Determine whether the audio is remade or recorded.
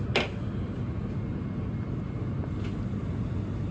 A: recorded